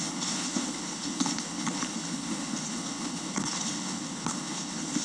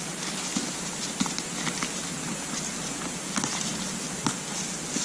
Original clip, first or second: second